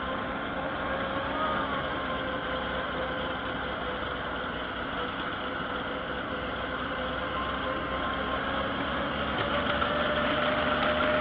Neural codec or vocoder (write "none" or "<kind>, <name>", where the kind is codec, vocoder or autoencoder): none